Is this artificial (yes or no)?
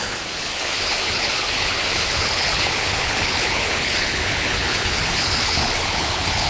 yes